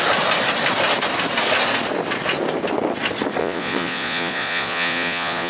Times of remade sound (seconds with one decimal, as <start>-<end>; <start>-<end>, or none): 3.4-5.5

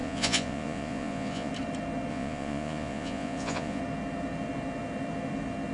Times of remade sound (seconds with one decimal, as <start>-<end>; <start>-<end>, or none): 0.0-1.5; 2.1-3.8

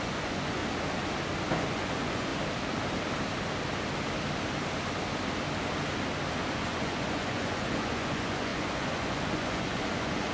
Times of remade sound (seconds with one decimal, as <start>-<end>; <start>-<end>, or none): 0.0-0.6; 1.5-2.3; 6.5-10.3

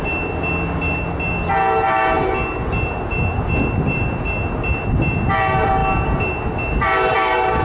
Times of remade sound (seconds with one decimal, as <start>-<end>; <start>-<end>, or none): none

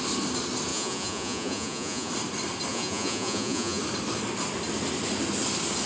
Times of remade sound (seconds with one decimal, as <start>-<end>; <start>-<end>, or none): 0.7-2.1; 2.7-3.8

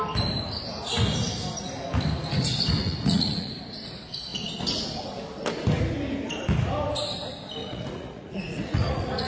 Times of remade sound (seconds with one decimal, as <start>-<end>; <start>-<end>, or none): 2.8-3.5; 7.6-9.3

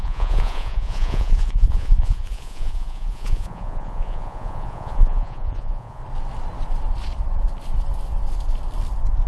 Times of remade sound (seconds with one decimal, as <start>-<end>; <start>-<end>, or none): 0.0-6.0

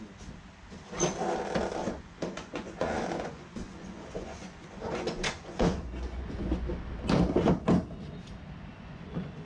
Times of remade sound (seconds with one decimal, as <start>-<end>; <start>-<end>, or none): 1.8-6.7; 8.7-9.5